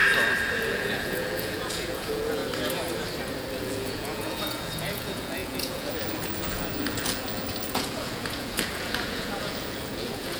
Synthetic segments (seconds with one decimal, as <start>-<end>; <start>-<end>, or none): 0.7-2.4; 3.6-10.4